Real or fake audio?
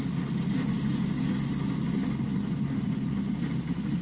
real